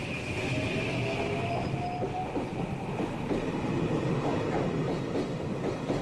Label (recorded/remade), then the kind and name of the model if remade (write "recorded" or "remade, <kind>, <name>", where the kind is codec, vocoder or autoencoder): recorded